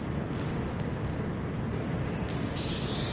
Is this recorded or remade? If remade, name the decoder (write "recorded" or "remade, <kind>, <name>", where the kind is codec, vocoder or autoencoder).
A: recorded